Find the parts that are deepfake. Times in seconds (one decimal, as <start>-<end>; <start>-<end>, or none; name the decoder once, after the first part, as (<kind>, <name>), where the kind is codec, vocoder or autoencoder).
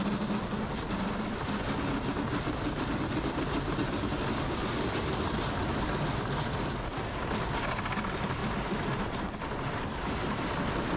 none